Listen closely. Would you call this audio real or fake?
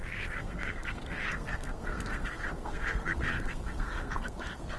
fake